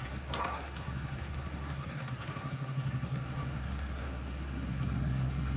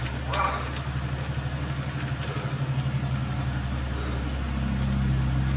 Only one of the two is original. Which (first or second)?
second